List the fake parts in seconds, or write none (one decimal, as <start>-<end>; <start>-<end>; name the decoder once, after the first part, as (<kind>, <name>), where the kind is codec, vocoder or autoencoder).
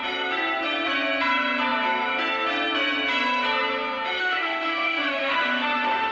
4.2-6.1 (autoencoder, DAC-VAE)